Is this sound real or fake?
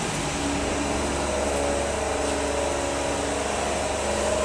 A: real